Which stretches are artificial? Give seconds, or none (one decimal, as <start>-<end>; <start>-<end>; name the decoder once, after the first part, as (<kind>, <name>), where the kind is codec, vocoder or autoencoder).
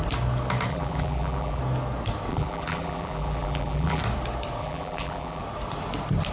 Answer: 0.7-1.6 (vocoder, BigVGAN v2); 2.3-4.0; 4.6-5.4